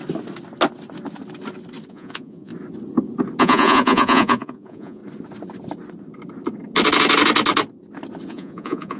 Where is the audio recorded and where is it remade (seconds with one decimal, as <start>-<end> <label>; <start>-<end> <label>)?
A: 0.0-1.9 recorded; 1.9-2.5 remade; 2.5-3.4 recorded; 3.4-5.0 remade; 5.0-8.3 recorded; 8.3-9.0 remade